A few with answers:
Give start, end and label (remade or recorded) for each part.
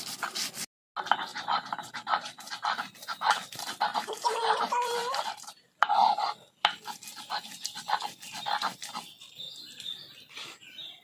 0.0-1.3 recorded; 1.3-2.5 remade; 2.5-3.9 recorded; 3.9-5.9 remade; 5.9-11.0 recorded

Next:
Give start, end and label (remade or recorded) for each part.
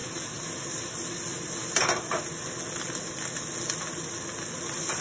0.0-5.0 recorded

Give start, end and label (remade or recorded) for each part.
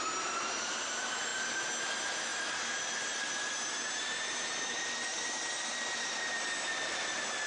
0.0-7.5 recorded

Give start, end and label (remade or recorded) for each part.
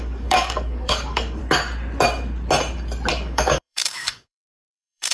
0.0-1.4 remade; 1.4-3.1 recorded; 3.1-5.1 remade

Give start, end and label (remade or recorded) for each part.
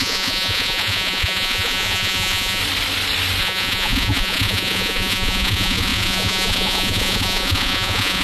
0.0-2.6 remade; 2.6-3.4 recorded; 3.4-8.2 remade